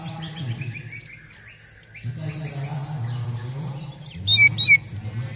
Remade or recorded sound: recorded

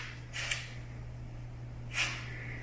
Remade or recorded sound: recorded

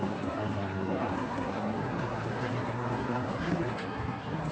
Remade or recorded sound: remade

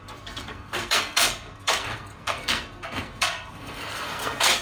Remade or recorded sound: remade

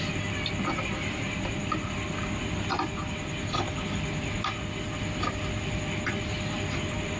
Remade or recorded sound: recorded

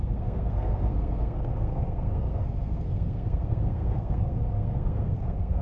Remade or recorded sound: remade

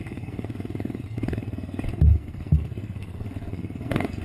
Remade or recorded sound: remade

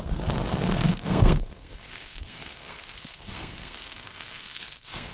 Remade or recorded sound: remade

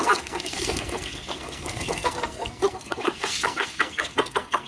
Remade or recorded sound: remade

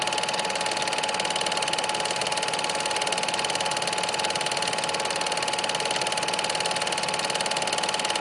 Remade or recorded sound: recorded